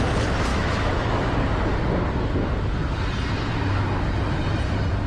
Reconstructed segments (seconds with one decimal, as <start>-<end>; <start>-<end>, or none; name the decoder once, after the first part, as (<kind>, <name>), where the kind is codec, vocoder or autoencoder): 0.5-1.2 (autoencoder, DAC-VAE)